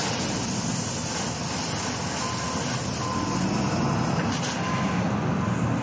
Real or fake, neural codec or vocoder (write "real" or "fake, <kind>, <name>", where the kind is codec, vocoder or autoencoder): real